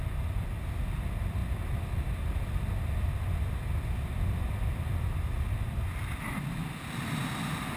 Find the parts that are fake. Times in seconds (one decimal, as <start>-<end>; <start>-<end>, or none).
none